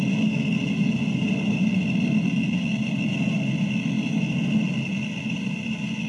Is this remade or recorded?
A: recorded